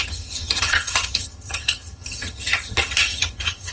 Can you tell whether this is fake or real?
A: fake